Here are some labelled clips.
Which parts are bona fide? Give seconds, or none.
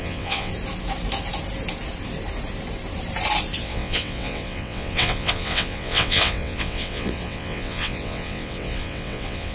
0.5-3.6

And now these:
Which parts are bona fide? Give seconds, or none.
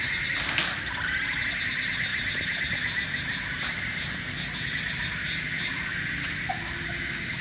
0.0-7.4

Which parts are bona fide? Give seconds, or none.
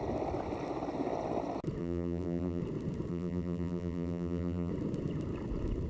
0.0-1.8; 2.6-3.1; 4.7-5.9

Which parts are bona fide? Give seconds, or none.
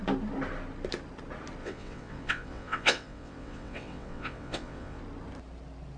0.0-1.6; 5.0-6.0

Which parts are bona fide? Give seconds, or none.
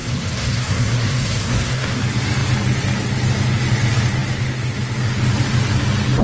2.0-6.2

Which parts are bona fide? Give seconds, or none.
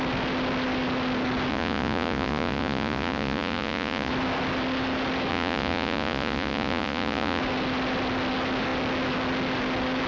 0.0-1.5; 4.1-5.3; 7.4-10.1